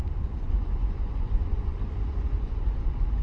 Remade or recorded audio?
remade